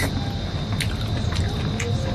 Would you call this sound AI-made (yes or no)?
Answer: no